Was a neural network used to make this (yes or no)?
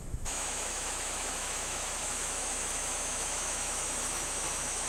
yes